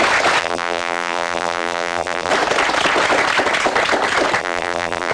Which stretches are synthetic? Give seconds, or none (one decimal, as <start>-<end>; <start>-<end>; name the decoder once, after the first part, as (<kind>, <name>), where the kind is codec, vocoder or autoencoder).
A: 0.4-2.3 (vocoder, BigVGAN v2); 4.4-5.1